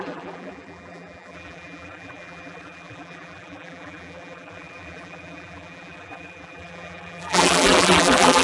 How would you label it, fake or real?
fake